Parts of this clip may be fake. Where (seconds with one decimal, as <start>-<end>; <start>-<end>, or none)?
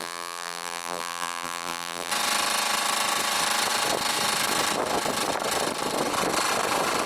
0.0-2.1